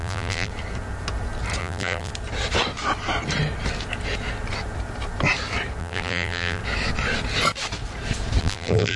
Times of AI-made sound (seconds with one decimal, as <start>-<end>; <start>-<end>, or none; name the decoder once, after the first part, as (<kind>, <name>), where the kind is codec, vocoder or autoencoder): 0.0-0.5 (vocoder, BigVGAN v2); 1.6-2.1; 5.8-6.6; 8.4-9.0